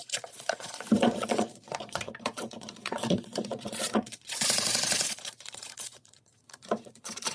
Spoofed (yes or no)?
yes